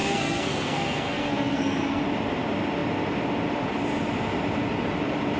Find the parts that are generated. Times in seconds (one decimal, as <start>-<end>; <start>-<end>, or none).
0.0-2.0